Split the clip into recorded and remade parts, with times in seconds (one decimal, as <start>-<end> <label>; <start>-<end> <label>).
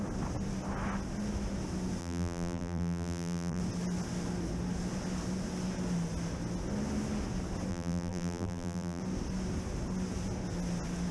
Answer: 0.0-2.0 recorded; 2.0-3.6 remade; 3.6-7.7 recorded; 7.7-9.0 remade; 9.0-11.1 recorded